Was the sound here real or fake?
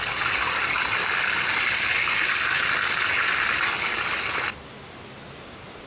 real